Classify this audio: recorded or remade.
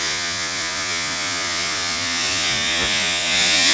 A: remade